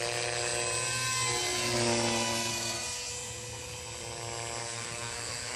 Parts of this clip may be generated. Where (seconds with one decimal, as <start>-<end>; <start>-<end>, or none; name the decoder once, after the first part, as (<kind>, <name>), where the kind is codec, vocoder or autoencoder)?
2.5-3.1 (codec, SNAC); 4.6-5.6